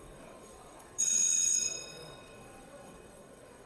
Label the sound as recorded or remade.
remade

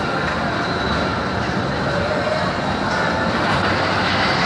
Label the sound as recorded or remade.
recorded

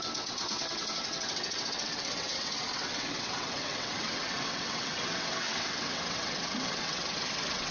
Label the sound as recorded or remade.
remade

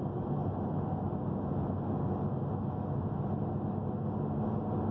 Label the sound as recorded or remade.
recorded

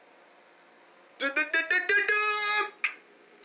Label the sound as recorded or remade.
recorded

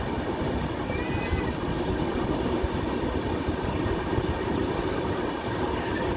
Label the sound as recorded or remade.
recorded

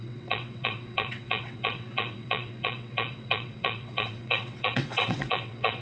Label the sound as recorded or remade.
remade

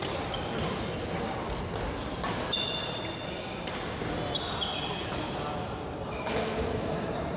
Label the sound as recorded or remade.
recorded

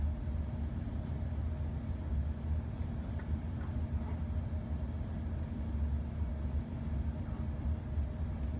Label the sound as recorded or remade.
recorded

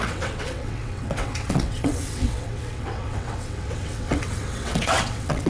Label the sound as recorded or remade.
remade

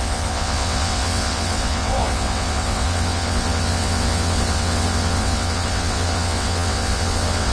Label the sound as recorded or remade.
remade